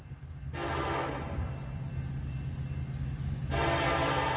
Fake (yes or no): no